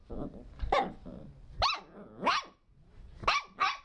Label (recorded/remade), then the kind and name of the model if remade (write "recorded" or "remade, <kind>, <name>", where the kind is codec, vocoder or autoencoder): recorded